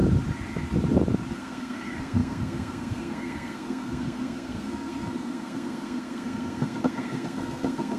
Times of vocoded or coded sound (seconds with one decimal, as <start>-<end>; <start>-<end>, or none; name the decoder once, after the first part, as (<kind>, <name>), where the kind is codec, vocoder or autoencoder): 1.3-8.0 (codec, SNAC)